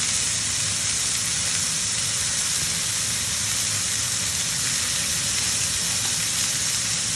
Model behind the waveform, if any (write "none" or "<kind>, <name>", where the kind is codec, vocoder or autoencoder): none